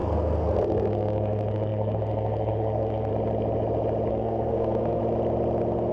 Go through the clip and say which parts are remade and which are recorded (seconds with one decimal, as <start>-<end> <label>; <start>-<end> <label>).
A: 0.0-3.1 remade; 3.1-4.1 recorded; 4.1-5.0 remade; 5.0-5.9 recorded